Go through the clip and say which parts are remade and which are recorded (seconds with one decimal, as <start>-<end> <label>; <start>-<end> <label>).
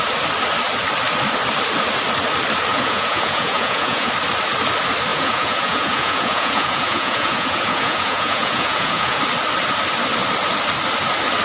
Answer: 0.0-2.7 recorded; 2.7-4.1 remade; 4.1-5.1 recorded; 5.1-9.2 remade; 9.2-11.4 recorded